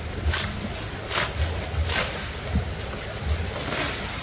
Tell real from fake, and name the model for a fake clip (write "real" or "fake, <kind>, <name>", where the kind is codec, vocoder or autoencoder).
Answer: real